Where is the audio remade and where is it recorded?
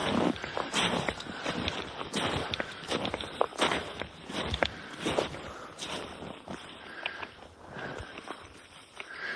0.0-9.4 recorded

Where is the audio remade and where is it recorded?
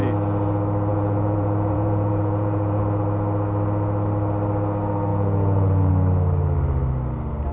0.0-0.9 recorded; 0.9-2.8 remade; 2.8-5.1 recorded; 5.1-5.9 remade; 5.9-7.5 recorded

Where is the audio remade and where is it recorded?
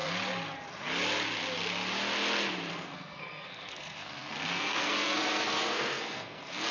0.0-2.7 recorded; 2.7-6.7 remade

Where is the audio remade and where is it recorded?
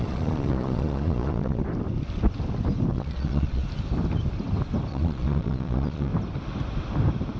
0.0-1.6 remade; 1.6-2.9 recorded; 2.9-3.6 remade; 3.6-4.9 recorded; 4.9-6.1 remade; 6.1-7.4 recorded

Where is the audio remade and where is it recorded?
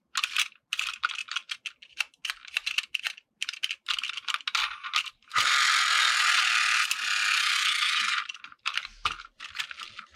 0.0-10.2 recorded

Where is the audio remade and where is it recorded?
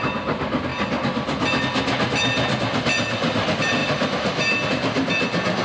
0.0-5.6 recorded